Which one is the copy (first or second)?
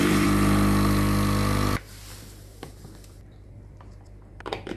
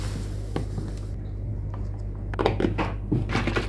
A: first